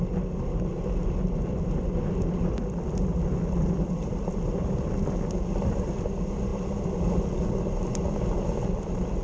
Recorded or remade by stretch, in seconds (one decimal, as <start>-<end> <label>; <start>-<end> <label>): 0.0-9.2 recorded

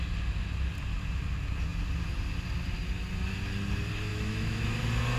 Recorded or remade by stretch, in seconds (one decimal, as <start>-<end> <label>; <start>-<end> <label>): 0.0-4.1 recorded; 4.1-4.8 remade; 4.8-5.2 recorded

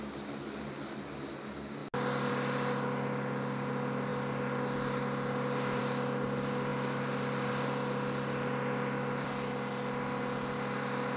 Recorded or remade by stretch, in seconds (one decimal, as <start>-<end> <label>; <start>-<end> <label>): 0.0-11.2 recorded

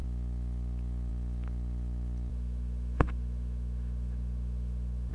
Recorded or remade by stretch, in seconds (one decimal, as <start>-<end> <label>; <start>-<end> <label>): 0.0-2.3 recorded; 2.3-5.1 remade